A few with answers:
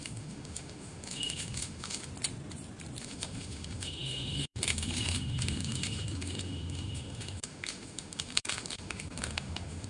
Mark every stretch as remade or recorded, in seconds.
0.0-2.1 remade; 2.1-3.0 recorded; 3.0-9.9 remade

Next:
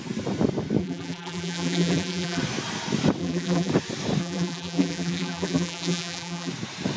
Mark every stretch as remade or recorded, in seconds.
0.0-0.8 recorded; 0.8-2.4 remade; 2.4-3.2 recorded; 3.2-3.7 remade; 3.7-4.2 recorded; 4.2-6.5 remade; 6.5-7.0 recorded

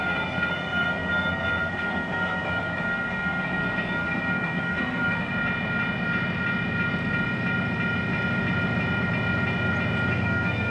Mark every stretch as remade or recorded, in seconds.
0.0-5.3 remade; 5.3-10.1 recorded; 10.1-10.7 remade

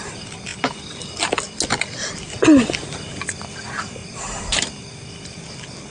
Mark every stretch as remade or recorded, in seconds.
0.0-4.0 recorded; 4.0-4.7 remade; 4.7-5.9 recorded

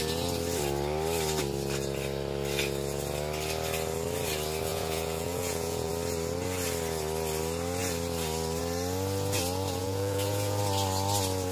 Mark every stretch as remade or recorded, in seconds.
0.0-4.7 recorded; 4.7-5.9 remade; 5.9-9.8 recorded; 9.8-10.6 remade; 10.6-11.5 recorded